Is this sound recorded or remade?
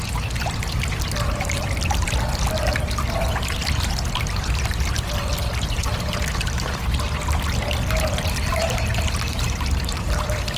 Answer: recorded